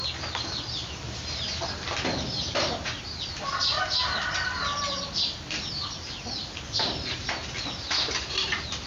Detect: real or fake real